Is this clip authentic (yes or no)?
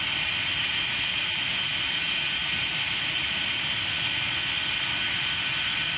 yes